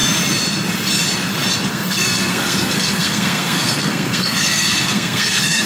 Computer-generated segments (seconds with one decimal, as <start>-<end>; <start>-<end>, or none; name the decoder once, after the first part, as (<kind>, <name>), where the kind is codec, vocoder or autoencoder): 1.7-5.7 (codec, SNAC)